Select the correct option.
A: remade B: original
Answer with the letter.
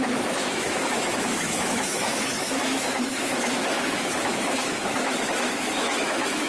A